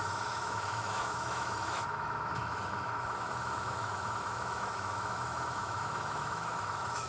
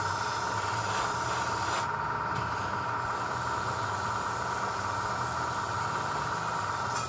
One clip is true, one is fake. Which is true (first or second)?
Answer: second